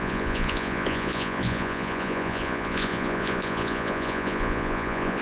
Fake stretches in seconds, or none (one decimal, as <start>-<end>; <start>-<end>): 0.0-5.2